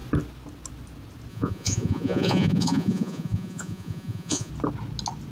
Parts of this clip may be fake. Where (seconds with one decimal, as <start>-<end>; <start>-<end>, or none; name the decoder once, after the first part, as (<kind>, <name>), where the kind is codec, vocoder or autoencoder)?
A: 1.3-4.5 (vocoder, Vocos)